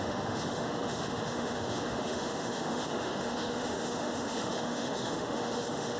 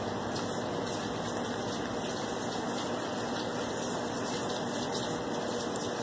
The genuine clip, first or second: second